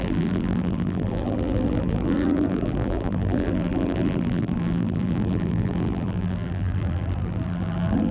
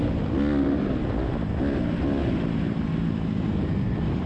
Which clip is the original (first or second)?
second